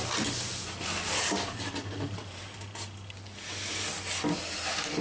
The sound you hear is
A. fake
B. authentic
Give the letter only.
B